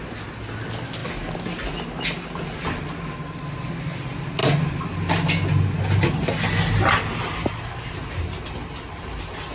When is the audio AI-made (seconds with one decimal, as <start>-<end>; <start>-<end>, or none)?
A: none